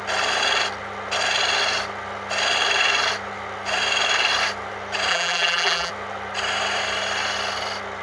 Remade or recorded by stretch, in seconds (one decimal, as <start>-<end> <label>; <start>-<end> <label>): 0.0-5.1 recorded; 5.1-5.9 remade; 5.9-8.0 recorded